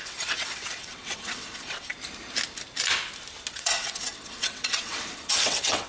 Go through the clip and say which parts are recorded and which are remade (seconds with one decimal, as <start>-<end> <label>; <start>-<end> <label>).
0.0-1.9 remade; 1.9-3.5 recorded; 3.5-5.9 remade